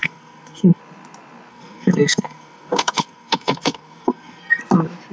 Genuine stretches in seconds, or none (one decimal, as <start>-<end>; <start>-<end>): 0.8-1.5; 4.6-5.1